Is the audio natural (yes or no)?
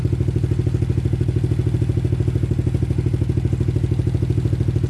yes